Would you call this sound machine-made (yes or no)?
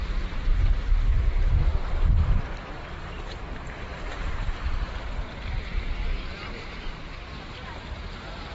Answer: yes